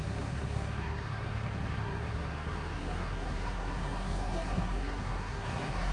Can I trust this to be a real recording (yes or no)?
no